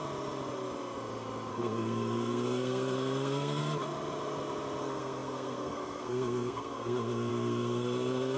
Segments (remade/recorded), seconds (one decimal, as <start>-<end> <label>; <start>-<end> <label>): 0.0-1.5 recorded; 1.5-3.6 remade; 3.6-4.8 recorded; 4.8-8.4 remade